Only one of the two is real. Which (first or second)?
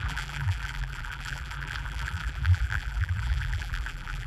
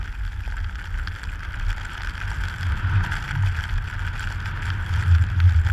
second